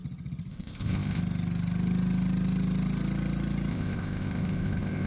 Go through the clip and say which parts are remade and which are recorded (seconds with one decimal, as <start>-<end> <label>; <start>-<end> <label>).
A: 0.0-0.5 recorded; 0.5-1.2 remade; 1.2-3.7 recorded; 3.7-5.1 remade